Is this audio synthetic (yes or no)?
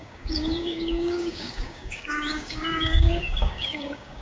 yes